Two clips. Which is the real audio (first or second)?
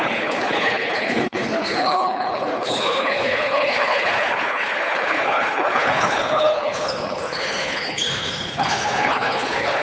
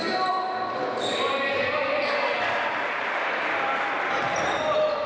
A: second